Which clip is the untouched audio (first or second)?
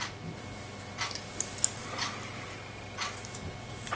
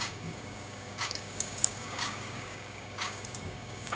first